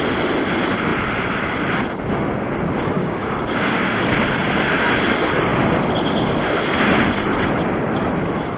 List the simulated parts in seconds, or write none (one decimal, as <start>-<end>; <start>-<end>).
3.0-4.1